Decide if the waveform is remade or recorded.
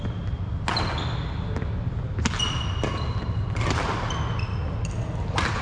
recorded